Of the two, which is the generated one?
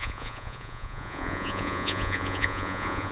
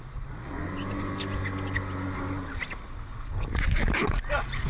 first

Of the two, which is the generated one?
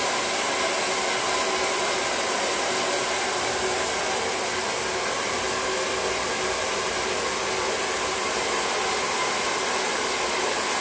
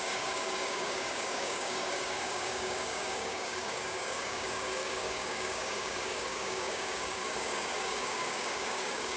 second